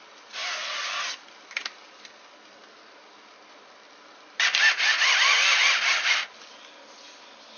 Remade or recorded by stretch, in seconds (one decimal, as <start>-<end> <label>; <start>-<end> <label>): 0.0-7.6 recorded